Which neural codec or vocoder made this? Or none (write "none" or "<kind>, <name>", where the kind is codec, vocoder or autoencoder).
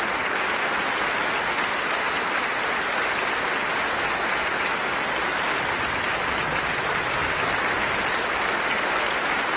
none